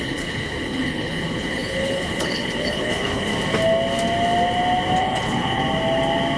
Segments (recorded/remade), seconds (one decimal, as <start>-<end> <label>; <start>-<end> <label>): 0.0-3.3 remade; 3.3-5.0 recorded; 5.0-5.6 remade; 5.6-6.4 recorded